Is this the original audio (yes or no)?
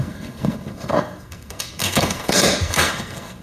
no